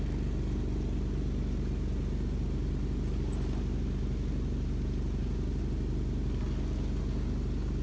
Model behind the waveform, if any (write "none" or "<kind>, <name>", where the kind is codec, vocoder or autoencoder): none